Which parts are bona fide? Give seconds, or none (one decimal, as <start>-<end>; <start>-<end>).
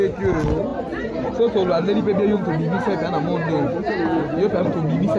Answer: 0.0-5.2